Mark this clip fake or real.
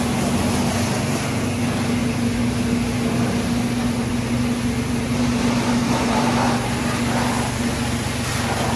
real